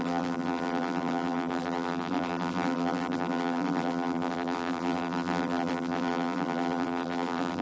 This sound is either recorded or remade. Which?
remade